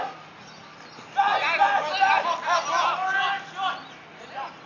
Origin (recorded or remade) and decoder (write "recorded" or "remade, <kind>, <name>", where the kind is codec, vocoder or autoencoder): recorded